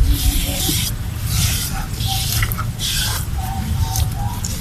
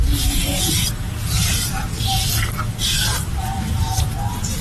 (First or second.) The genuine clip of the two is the second